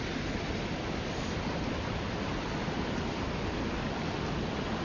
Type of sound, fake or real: real